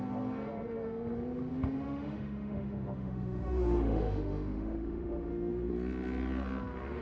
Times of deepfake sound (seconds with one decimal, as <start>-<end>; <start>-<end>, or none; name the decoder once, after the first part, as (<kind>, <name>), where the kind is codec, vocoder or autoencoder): 1.5-5.7 (autoencoder, DAC-VAE)